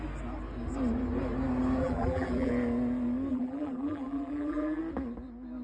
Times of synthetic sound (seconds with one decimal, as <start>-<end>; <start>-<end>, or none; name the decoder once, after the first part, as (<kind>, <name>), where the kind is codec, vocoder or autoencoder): 1.8-2.5 (vocoder, BigVGAN v2); 3.3-4.8